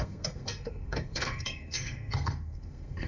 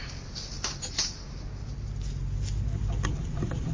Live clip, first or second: second